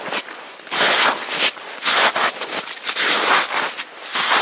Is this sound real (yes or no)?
yes